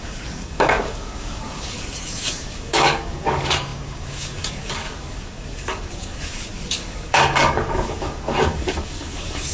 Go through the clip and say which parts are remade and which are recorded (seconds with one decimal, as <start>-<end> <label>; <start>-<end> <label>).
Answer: 0.0-9.5 remade